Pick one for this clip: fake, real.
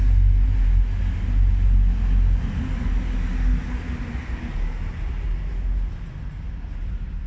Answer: real